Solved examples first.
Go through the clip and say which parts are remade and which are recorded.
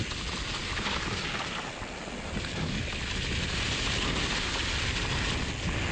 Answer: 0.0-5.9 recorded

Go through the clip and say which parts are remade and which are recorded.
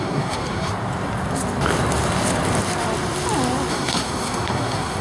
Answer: 0.0-0.7 remade; 0.7-3.7 recorded; 3.7-5.0 remade